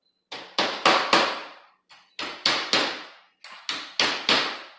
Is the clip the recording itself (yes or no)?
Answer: yes